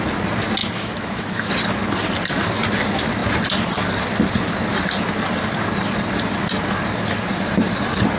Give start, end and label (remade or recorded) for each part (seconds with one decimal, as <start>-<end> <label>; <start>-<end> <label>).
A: 0.0-0.6 recorded; 0.6-1.5 remade; 1.5-8.2 recorded